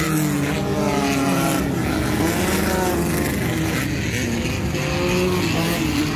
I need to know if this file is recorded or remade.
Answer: recorded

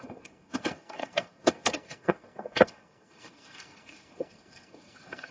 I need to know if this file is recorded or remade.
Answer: remade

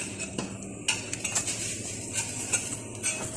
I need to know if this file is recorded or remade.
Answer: recorded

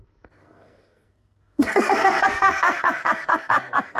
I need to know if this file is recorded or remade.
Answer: remade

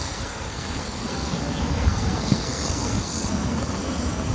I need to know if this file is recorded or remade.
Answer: remade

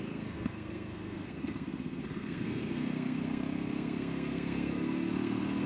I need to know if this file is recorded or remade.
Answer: remade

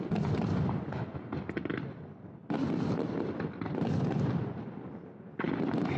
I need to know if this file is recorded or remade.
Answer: recorded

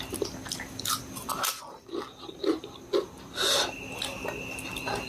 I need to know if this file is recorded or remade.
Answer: recorded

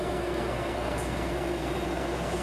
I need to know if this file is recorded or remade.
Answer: remade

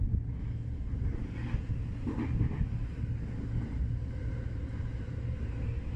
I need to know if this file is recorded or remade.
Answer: recorded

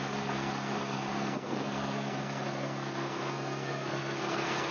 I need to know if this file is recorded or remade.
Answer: remade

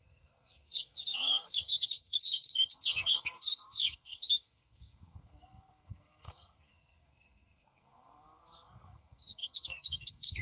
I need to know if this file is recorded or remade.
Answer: remade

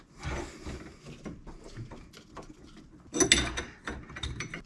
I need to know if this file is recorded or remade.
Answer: recorded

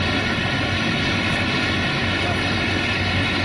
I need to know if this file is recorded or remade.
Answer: recorded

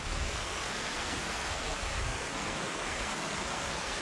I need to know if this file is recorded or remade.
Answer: remade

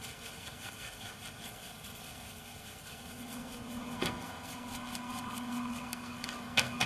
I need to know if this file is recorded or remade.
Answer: remade